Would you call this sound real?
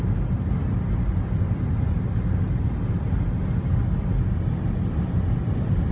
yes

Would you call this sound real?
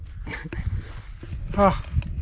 yes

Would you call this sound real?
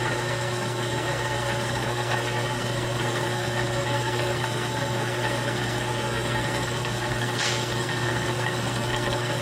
no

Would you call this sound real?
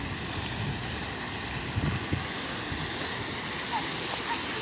yes